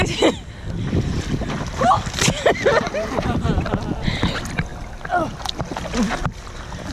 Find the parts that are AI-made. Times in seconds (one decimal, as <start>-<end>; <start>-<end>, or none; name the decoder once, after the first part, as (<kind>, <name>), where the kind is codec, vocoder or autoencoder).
none